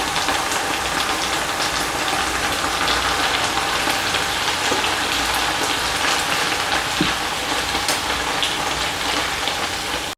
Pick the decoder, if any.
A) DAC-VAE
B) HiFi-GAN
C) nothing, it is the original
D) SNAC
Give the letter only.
C